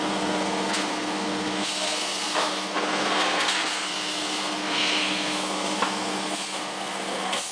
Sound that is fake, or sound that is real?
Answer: fake